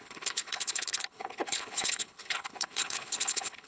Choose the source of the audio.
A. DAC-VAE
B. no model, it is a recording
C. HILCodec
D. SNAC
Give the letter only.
C